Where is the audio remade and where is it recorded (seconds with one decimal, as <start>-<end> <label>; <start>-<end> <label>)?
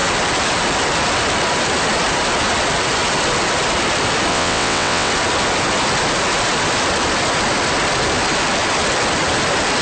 0.0-4.3 recorded; 4.3-5.1 remade; 5.1-9.8 recorded